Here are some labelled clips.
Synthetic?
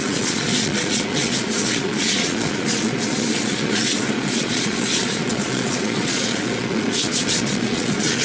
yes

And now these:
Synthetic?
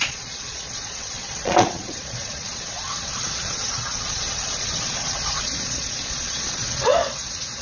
yes